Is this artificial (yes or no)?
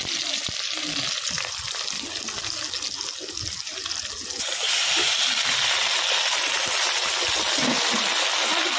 no